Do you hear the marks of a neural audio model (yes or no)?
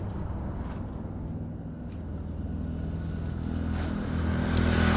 no